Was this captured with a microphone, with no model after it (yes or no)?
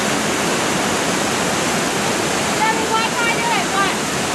yes